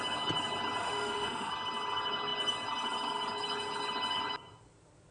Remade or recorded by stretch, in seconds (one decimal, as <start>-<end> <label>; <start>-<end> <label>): 0.0-0.8 recorded; 0.8-1.5 remade; 1.5-5.1 recorded